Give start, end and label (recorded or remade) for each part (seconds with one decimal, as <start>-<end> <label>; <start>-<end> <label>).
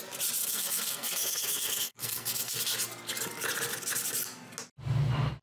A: 0.0-0.4 recorded; 0.4-2.6 remade; 2.6-5.4 recorded